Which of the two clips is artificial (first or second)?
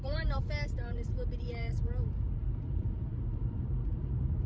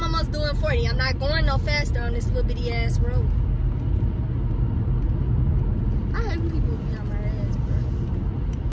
first